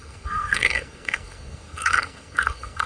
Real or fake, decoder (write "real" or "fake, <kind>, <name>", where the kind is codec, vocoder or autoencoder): fake, codec, SNAC